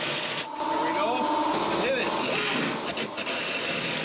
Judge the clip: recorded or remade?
recorded